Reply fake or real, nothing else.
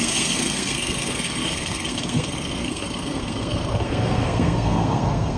fake